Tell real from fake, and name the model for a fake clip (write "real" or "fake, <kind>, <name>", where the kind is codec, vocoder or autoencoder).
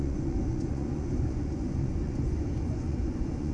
fake, vocoder, Vocos